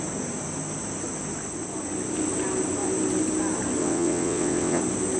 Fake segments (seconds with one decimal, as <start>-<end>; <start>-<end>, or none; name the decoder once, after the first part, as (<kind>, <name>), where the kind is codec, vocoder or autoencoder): 3.8-4.8 (vocoder, WaveNeXt)